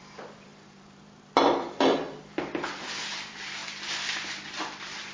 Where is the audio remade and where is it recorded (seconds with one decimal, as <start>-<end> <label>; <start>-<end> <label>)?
0.0-3.6 remade; 3.6-4.3 recorded; 4.3-5.1 remade